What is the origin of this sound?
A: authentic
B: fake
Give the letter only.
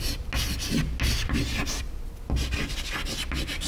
A